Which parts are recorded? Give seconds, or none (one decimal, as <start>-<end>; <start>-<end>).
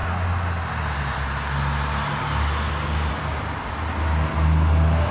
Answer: 0.0-5.1